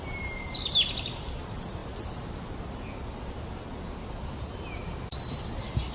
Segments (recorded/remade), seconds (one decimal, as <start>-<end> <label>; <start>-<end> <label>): 0.0-5.9 recorded